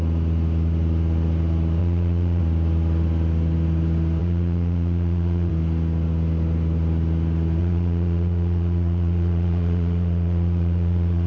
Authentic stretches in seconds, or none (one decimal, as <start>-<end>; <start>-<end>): 0.0-1.8; 2.4-4.2; 5.5-7.6